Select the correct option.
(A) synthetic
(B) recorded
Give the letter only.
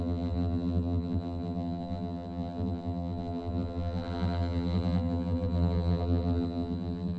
A